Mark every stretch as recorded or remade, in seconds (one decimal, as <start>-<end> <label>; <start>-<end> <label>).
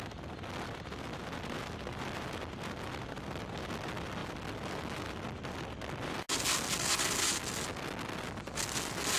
0.0-9.2 recorded